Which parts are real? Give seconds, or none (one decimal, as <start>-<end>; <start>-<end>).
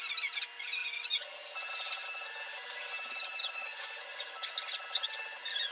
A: 0.0-3.4; 4.5-5.7